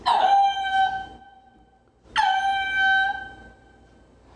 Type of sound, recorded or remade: recorded